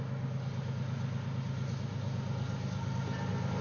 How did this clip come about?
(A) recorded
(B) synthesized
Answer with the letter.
A